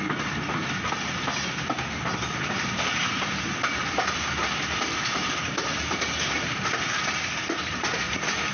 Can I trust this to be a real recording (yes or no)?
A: yes